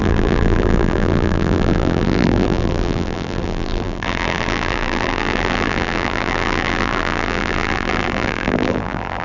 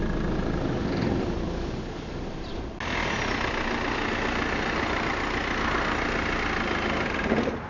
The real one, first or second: second